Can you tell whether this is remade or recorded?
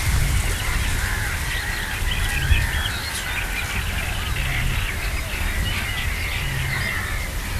recorded